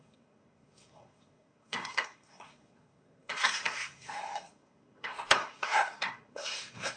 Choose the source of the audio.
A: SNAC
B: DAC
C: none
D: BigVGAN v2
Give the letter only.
A